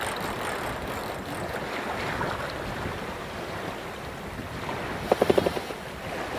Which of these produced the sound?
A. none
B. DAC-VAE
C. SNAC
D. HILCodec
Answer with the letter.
A